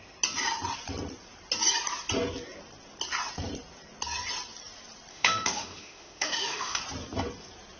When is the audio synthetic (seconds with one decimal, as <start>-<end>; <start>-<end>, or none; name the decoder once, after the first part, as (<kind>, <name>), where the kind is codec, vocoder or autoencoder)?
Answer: 5.1-6.8 (autoencoder, DAC-VAE)